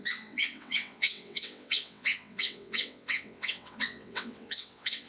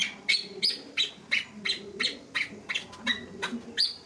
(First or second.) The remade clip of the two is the first